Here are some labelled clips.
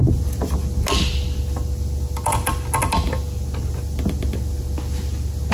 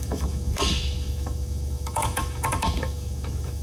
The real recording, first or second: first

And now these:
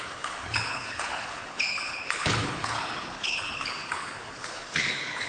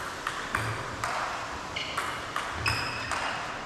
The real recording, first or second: second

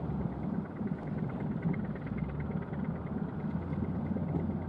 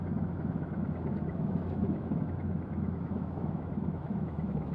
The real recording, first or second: first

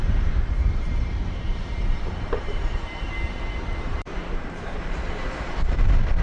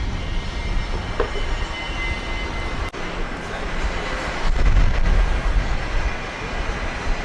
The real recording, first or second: second